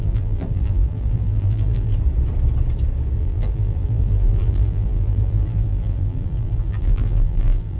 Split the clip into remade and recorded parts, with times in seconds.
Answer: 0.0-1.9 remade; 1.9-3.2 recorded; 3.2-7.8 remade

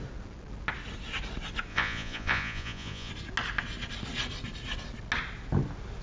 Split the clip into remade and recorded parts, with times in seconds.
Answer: 0.0-1.7 recorded; 1.7-3.1 remade; 3.1-6.0 recorded

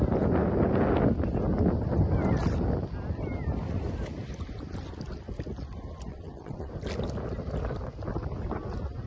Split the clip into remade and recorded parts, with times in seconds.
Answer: 0.0-6.1 recorded; 6.1-6.7 remade; 6.7-9.1 recorded

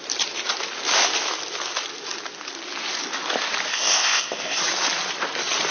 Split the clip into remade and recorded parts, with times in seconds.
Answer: 0.0-3.7 recorded; 3.7-4.6 remade; 4.6-5.7 recorded

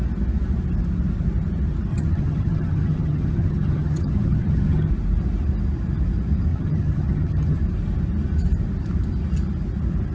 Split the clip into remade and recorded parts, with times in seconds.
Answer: 0.0-1.9 recorded; 1.9-4.9 remade; 4.9-6.5 recorded; 6.5-7.6 remade; 7.6-10.1 recorded

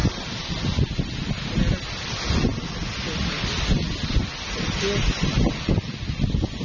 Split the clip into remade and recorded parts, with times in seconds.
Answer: 0.0-6.6 recorded

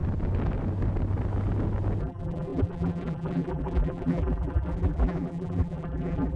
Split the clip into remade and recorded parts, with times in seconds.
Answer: 0.0-2.0 recorded; 2.0-6.4 remade

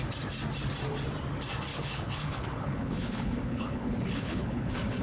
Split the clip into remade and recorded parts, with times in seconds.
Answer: 0.0-1.7 recorded; 1.7-5.0 remade